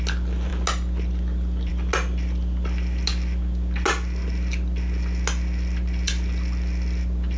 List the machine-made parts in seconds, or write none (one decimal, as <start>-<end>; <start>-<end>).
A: none